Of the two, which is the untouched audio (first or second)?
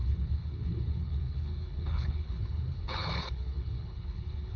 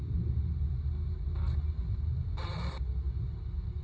second